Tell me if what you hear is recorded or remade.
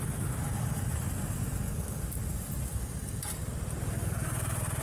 recorded